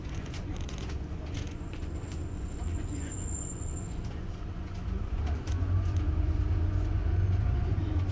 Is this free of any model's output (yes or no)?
no